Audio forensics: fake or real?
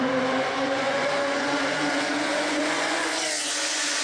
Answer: fake